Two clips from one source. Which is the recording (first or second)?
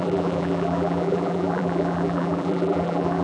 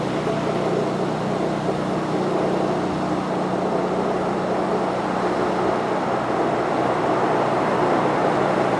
second